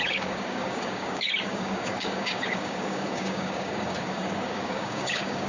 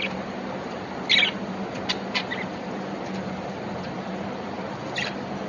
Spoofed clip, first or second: first